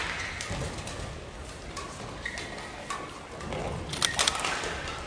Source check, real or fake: real